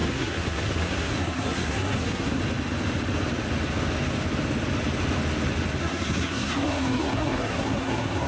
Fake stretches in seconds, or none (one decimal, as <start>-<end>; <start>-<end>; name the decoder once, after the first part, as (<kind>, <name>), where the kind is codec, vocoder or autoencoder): 0.0-2.4 (codec, SNAC); 5.8-8.3